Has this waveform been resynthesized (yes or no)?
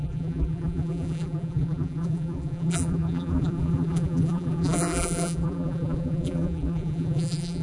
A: yes